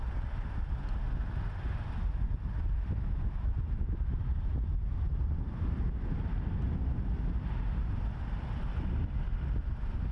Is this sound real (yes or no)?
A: yes